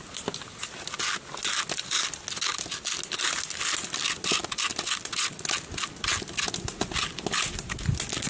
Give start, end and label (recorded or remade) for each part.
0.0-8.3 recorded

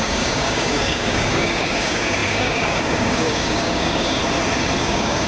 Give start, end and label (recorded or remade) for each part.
0.0-4.2 remade; 4.2-4.8 recorded; 4.8-5.3 remade

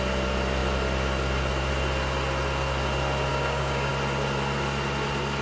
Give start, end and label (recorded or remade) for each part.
0.0-3.3 recorded; 3.3-3.9 remade; 3.9-5.4 recorded

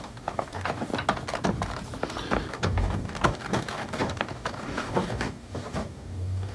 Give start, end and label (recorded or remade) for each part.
0.0-0.9 remade; 0.9-2.5 recorded; 2.5-6.5 remade

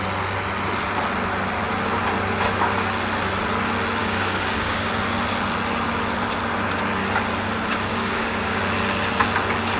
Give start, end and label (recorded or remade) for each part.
0.0-4.0 recorded; 4.0-4.9 remade; 4.9-7.9 recorded; 7.9-8.6 remade; 8.6-9.8 recorded

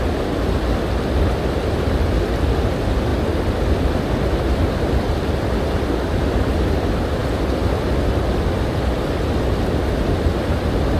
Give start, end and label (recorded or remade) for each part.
0.0-11.0 recorded